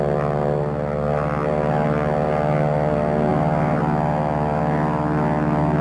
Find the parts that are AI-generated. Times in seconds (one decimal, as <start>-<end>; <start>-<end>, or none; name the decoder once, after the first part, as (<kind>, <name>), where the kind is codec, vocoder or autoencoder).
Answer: none